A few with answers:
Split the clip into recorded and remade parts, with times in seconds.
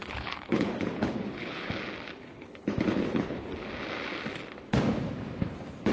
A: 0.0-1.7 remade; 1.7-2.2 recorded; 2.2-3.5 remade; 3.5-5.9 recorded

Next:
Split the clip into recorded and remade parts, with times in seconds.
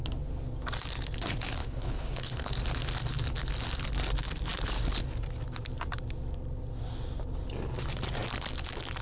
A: 0.0-1.6 recorded; 1.6-2.5 remade; 2.5-9.0 recorded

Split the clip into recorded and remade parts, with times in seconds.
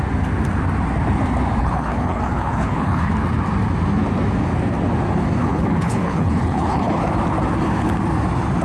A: 0.0-1.6 recorded; 1.6-3.1 remade; 3.1-5.4 recorded; 5.4-7.0 remade; 7.0-8.6 recorded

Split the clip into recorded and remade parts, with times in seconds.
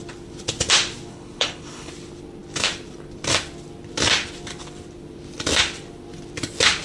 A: 0.0-1.1 recorded; 1.1-1.9 remade; 1.9-6.8 recorded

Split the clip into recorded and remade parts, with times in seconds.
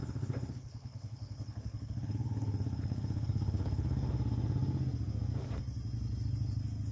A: 0.0-4.1 remade; 4.1-6.9 recorded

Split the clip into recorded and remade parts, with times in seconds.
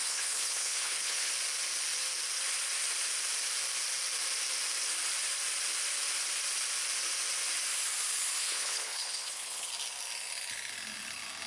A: 0.0-1.3 remade; 1.3-8.4 recorded; 8.4-9.7 remade; 9.7-11.5 recorded